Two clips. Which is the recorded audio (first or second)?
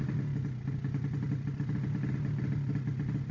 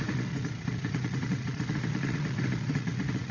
first